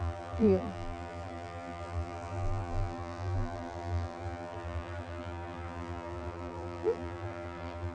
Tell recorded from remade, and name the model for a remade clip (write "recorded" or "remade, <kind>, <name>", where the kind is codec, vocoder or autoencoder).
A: remade, vocoder, BigVGAN v2